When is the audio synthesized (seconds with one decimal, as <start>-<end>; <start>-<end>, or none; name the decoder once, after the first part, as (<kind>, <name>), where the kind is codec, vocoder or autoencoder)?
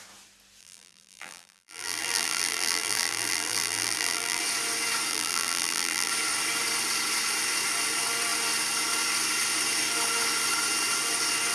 0.6-4.4 (vocoder, BigVGAN v2); 5.1-6.1